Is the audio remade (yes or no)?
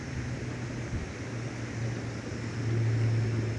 no